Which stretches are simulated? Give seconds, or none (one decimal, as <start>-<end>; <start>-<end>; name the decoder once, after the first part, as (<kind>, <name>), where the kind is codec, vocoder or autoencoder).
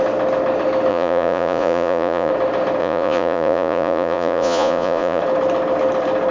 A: 0.9-2.3 (vocoder, Vocos); 2.8-5.2